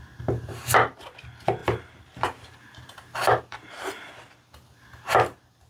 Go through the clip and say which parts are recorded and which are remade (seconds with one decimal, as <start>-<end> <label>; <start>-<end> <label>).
0.0-1.6 recorded; 1.6-3.8 remade; 3.8-5.7 recorded